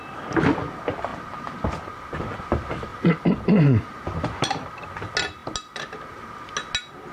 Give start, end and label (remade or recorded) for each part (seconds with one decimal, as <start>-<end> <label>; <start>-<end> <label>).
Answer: 0.0-2.9 recorded; 2.9-4.4 remade; 4.4-7.1 recorded

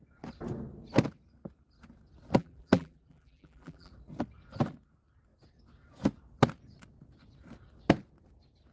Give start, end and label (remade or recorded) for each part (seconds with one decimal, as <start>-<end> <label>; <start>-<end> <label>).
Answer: 0.0-2.4 recorded; 2.4-3.9 remade; 3.9-8.7 recorded

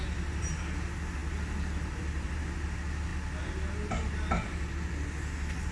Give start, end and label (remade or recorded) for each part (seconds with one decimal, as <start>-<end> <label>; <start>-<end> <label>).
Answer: 0.0-1.2 recorded; 1.2-2.4 remade; 2.4-5.7 recorded

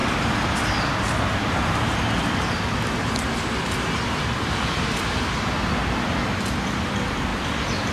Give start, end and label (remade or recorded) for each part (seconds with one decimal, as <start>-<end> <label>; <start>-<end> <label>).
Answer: 0.0-0.9 remade; 0.9-7.3 recorded; 7.3-7.9 remade

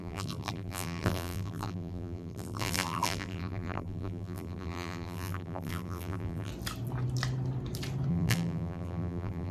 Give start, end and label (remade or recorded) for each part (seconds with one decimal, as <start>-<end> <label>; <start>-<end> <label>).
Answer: 0.0-6.5 remade; 6.5-8.1 recorded; 8.1-9.5 remade